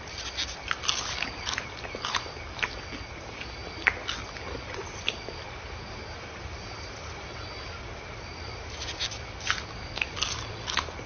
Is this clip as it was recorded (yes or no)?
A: yes